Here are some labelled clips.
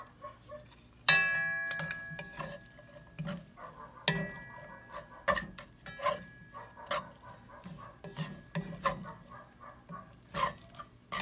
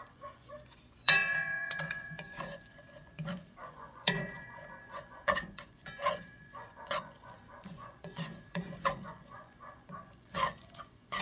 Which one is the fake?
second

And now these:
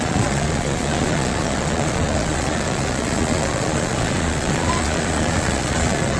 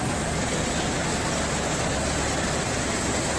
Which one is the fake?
first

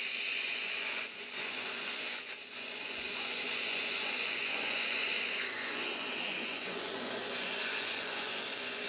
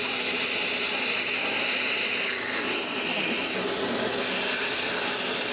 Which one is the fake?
first